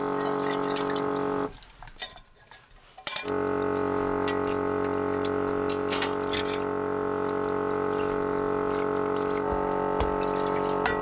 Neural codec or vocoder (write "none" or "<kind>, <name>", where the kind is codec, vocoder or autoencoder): none